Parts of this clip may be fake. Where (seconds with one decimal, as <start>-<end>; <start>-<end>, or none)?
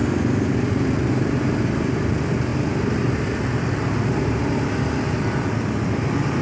none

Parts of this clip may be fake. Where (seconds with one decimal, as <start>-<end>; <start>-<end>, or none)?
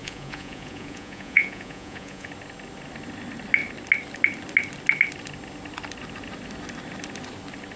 0.0-2.3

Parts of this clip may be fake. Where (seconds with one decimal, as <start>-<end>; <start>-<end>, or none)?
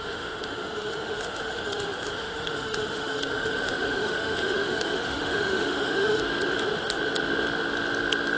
0.0-6.2